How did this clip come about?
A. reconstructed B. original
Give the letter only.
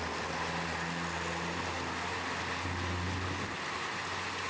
B